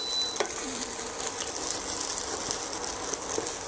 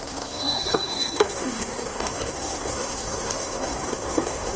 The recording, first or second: first